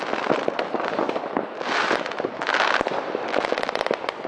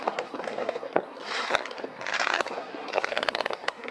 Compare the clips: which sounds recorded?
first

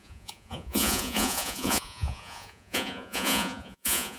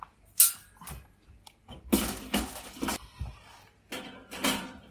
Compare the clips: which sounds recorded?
second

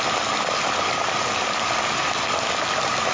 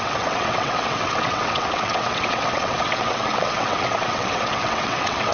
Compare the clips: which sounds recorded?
first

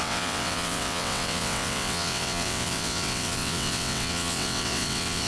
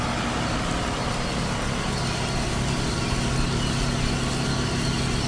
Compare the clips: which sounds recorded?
second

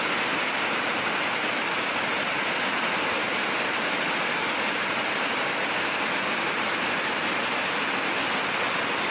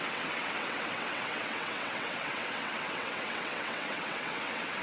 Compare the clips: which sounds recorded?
first